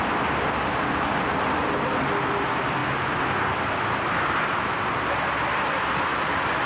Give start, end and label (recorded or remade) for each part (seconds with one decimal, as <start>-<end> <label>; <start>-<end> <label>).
0.0-6.7 recorded